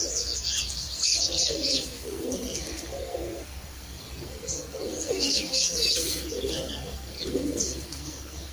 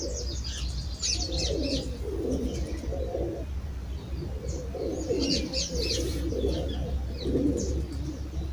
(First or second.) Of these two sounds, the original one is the second